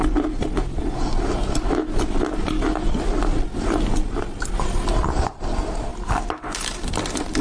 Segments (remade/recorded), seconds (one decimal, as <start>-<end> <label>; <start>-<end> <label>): 0.0-7.4 recorded